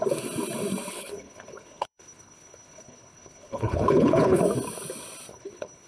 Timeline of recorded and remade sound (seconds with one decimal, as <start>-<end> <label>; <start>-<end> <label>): 0.0-0.9 recorded; 0.9-4.4 remade; 4.4-5.3 recorded; 5.3-5.9 remade